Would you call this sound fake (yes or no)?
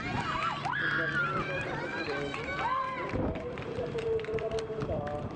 yes